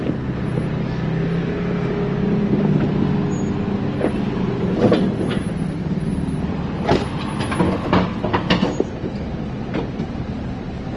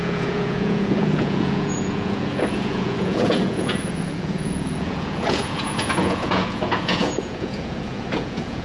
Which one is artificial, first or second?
second